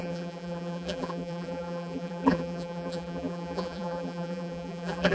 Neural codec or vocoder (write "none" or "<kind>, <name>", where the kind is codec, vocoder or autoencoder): vocoder, BigVGAN v2